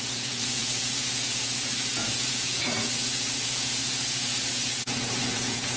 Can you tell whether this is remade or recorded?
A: remade